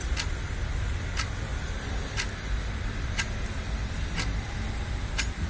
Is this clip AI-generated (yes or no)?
yes